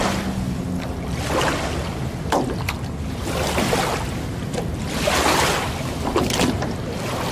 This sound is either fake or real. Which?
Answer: real